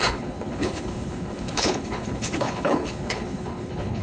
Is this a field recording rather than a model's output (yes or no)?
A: no